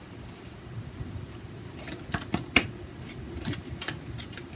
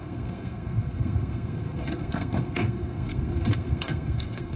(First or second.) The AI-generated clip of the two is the second